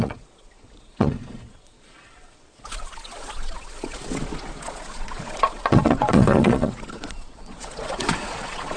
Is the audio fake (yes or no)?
yes